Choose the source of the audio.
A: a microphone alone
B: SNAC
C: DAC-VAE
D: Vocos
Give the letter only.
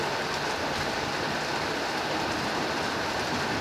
A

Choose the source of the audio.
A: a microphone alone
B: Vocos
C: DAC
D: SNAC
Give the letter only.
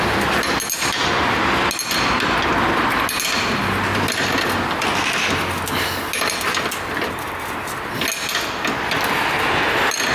A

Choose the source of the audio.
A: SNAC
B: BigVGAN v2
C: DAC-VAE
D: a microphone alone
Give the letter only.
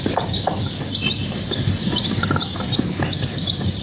D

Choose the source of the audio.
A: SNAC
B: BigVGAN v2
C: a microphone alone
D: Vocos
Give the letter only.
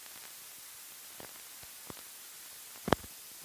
C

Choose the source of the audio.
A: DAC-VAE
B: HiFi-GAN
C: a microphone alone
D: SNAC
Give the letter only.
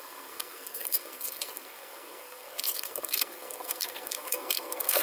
D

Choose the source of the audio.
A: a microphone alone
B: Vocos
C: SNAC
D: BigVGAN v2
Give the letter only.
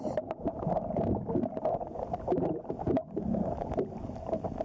A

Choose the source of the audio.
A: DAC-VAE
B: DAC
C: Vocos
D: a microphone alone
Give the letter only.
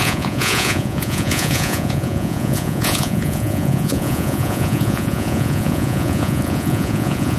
C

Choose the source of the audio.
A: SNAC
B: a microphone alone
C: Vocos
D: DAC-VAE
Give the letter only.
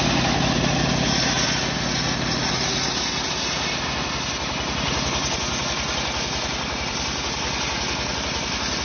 B